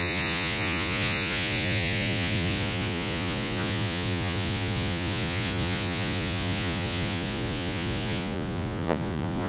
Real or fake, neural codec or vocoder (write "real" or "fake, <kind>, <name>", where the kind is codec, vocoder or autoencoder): fake, vocoder, Vocos